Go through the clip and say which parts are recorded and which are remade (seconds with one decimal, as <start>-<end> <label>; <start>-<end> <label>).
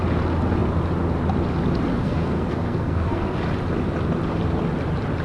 0.0-1.9 recorded; 1.9-3.4 remade; 3.4-5.2 recorded